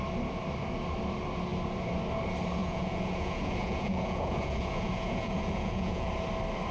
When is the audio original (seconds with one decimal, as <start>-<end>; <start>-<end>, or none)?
0.0-2.6; 6.1-6.7